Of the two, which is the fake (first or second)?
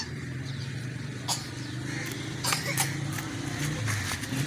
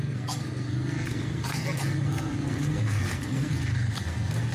second